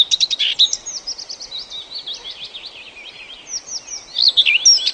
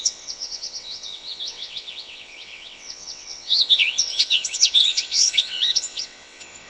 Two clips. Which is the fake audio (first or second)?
second